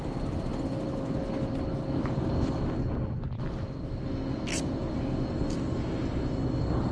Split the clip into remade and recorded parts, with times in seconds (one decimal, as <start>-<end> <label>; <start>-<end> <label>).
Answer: 0.0-6.9 recorded

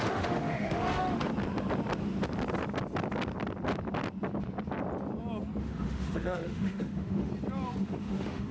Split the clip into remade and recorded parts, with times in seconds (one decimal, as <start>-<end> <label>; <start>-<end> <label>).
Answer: 0.0-1.3 remade; 1.3-5.6 recorded; 5.6-7.3 remade; 7.3-7.8 recorded; 7.8-8.5 remade